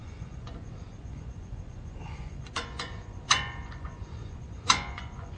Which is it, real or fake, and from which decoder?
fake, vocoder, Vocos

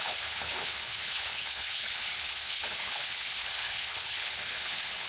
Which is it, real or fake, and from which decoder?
fake, codec, HILCodec